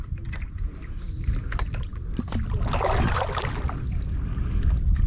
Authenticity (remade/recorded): recorded